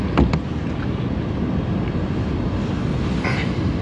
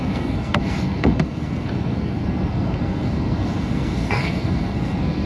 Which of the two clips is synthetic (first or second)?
second